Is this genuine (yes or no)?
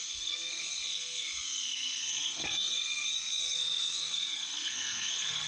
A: no